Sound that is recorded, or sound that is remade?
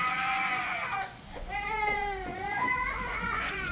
remade